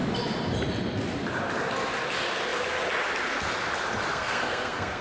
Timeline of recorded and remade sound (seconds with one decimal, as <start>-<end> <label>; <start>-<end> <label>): 0.0-4.1 recorded; 4.1-5.0 remade

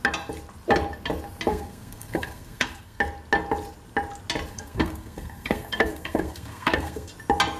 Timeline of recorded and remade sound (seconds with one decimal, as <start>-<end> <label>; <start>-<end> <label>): 0.0-1.5 recorded; 1.5-3.0 remade; 3.0-4.5 recorded; 4.5-7.1 remade; 7.1-7.6 recorded

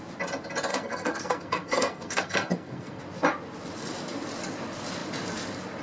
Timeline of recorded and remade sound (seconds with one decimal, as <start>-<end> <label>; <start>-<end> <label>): 0.0-0.7 recorded; 0.7-3.0 remade; 3.0-5.8 recorded

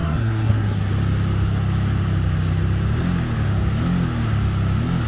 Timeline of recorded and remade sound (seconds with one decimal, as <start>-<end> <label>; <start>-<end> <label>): 0.0-0.9 remade; 0.9-5.1 recorded